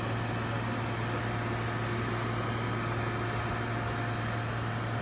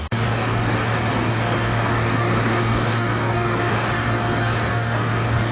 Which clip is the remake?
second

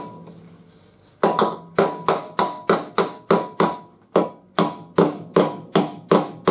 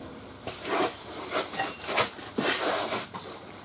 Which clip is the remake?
second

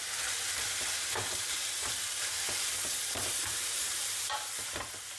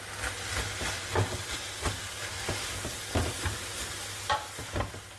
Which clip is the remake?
first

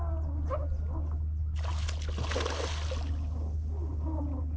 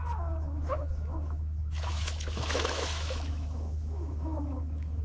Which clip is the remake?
second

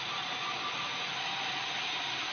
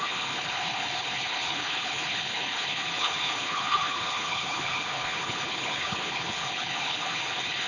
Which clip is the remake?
second